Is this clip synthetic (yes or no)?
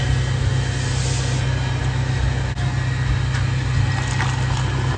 no